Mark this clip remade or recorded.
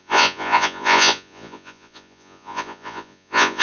remade